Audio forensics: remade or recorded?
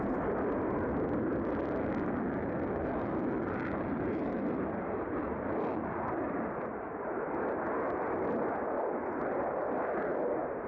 recorded